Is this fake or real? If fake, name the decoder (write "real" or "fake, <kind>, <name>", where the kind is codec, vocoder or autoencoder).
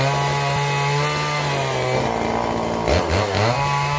real